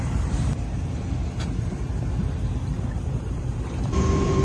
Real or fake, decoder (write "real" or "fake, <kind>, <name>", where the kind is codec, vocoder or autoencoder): fake, vocoder, BigVGAN v2